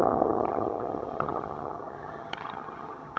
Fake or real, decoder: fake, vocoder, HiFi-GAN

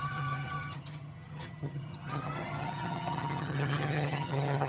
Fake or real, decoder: fake, vocoder, HiFi-GAN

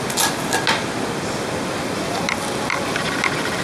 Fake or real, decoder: real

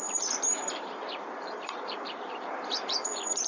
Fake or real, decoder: fake, vocoder, BigVGAN v2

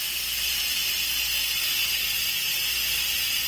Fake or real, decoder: real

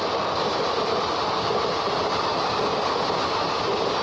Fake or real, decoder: real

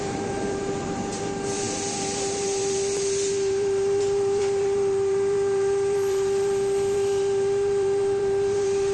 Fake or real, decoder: fake, vocoder, BigVGAN v2